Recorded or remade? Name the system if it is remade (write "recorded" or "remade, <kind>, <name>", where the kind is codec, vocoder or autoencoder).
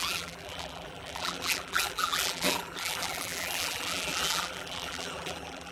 remade, vocoder, BigVGAN v2